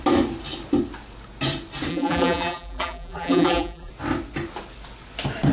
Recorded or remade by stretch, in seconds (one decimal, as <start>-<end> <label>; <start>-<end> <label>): 0.0-1.9 recorded; 1.9-3.9 remade; 3.9-5.5 recorded